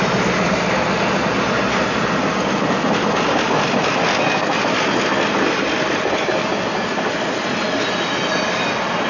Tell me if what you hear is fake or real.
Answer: real